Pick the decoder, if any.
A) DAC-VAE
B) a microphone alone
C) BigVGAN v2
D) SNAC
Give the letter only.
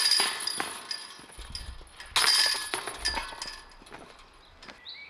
B